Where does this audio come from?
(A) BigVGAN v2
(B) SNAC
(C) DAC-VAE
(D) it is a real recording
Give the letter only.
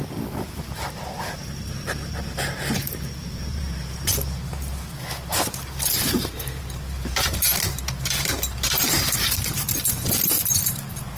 A